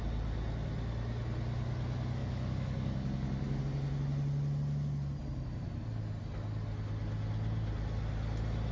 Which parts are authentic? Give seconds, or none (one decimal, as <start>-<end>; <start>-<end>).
0.0-2.2; 3.6-8.7